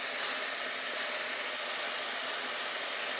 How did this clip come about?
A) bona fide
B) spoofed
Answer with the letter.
A